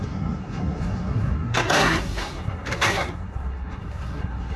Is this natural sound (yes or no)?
no